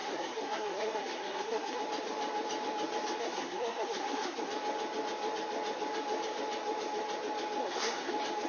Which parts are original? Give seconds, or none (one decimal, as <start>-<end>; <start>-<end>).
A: 1.8-3.2; 4.5-7.6; 8.1-8.5